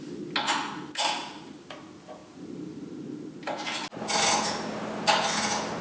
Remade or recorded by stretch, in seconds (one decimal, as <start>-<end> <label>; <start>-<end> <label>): 0.0-1.2 recorded; 1.2-1.8 remade; 1.8-5.8 recorded